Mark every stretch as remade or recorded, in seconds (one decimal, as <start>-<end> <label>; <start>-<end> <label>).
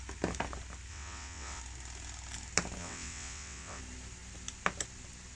0.0-0.9 recorded; 0.9-1.6 remade; 1.6-2.8 recorded; 2.8-3.8 remade; 3.8-5.4 recorded